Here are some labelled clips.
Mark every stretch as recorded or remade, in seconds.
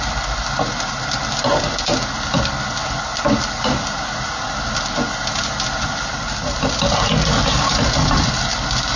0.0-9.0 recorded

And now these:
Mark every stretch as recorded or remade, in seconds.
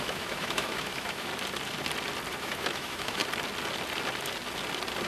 0.0-1.3 remade; 1.3-2.4 recorded; 2.4-3.2 remade; 3.2-5.1 recorded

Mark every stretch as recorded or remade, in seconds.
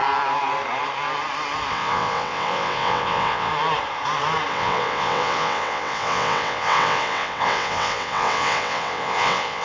0.0-1.7 recorded; 1.7-3.5 remade; 3.5-4.5 recorded; 4.5-9.6 remade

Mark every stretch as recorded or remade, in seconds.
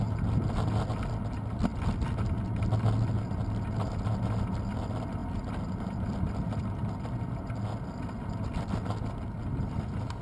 0.0-10.2 recorded